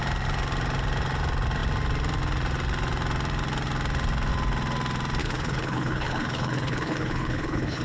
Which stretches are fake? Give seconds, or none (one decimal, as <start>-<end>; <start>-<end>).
5.2-7.8